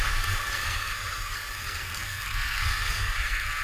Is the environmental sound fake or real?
fake